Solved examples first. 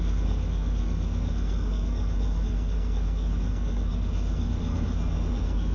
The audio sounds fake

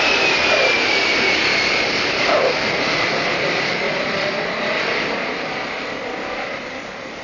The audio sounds real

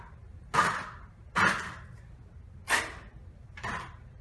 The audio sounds real